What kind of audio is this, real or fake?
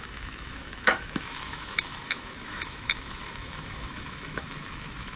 fake